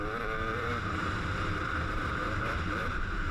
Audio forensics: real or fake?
fake